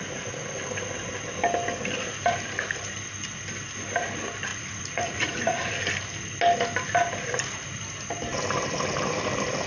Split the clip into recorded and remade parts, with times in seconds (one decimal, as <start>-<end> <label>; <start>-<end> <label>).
0.0-4.5 recorded; 4.5-5.7 remade; 5.7-9.7 recorded